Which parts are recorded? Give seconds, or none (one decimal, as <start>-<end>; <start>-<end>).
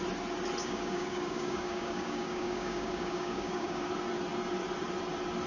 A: 0.0-0.6; 3.9-5.5